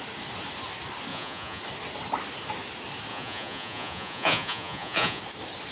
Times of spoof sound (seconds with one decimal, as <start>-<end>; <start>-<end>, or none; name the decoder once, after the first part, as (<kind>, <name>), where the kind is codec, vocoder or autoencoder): 1.1-1.6 (vocoder, Vocos); 3.1-5.2